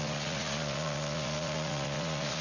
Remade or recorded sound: remade